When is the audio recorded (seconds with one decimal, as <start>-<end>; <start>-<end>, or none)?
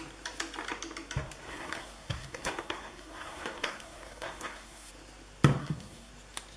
0.0-1.5; 4.9-5.6; 6.1-6.6